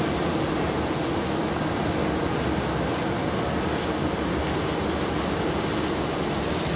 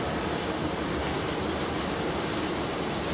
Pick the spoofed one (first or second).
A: second